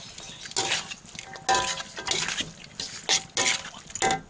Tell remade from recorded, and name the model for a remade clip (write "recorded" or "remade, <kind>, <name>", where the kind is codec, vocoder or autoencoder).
recorded